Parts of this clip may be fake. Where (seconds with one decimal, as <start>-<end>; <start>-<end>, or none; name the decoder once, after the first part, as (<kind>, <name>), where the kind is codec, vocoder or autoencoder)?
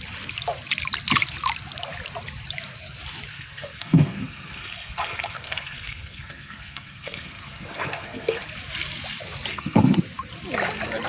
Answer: 3.3-8.4 (codec, SNAC); 9.5-10.0